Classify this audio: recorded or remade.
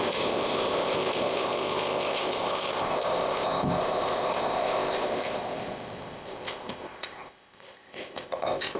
remade